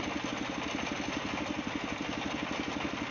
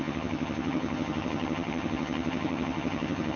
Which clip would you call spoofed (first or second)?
second